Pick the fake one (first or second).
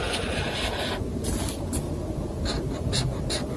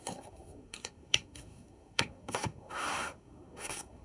second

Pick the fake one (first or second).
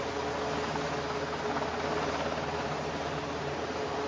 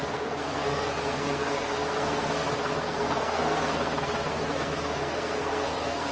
second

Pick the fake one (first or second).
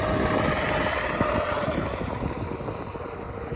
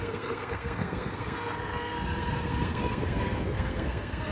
second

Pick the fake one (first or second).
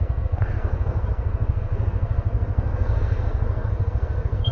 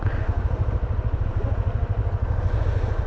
first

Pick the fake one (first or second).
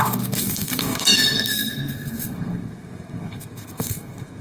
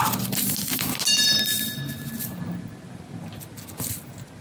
first